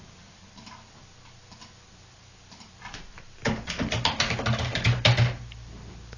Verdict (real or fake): real